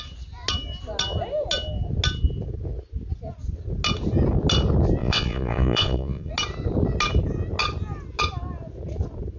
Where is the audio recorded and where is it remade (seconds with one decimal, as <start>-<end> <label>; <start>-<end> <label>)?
0.0-5.0 recorded; 5.0-6.3 remade; 6.3-9.4 recorded

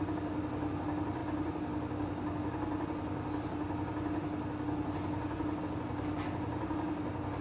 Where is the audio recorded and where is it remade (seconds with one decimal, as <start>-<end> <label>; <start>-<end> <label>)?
0.0-7.4 recorded

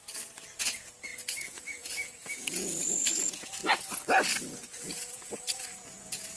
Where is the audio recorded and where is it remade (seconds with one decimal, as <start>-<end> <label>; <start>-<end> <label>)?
0.0-0.5 recorded; 0.5-3.6 remade; 3.6-4.6 recorded; 4.6-6.4 remade

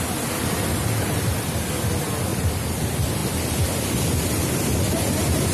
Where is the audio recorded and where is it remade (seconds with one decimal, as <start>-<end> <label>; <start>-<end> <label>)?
0.0-5.5 recorded

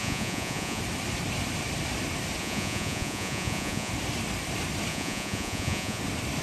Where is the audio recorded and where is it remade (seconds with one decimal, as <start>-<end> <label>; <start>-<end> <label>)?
0.0-0.8 remade; 0.8-2.4 recorded; 2.4-3.9 remade; 3.9-4.9 recorded; 4.9-6.0 remade; 6.0-6.4 recorded

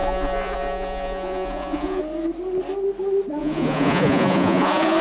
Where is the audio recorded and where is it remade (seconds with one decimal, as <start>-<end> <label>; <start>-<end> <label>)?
0.0-2.0 remade; 2.0-3.4 recorded; 3.4-5.0 remade